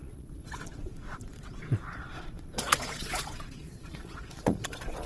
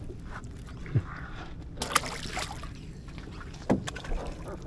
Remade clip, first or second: first